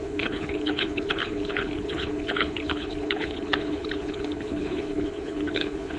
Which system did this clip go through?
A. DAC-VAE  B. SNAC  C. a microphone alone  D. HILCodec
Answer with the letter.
D